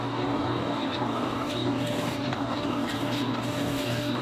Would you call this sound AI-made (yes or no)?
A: yes